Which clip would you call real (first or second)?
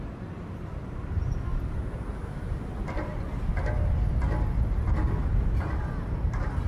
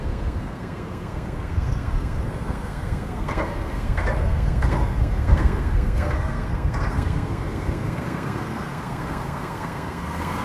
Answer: first